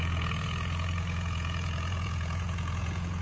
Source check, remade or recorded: remade